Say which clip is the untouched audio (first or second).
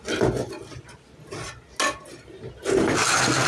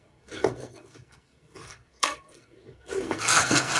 first